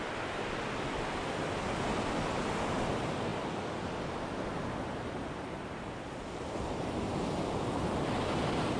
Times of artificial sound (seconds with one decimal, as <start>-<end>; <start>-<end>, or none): none